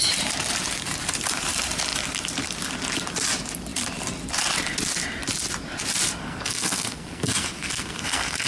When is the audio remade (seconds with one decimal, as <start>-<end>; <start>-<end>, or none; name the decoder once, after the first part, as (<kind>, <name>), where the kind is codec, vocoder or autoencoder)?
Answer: 6.2-8.5 (codec, SNAC)